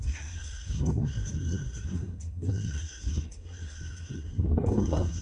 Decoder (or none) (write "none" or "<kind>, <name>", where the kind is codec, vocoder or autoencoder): codec, SNAC